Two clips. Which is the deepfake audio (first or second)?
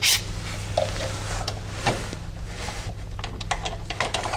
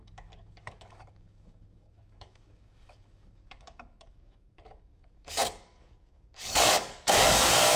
second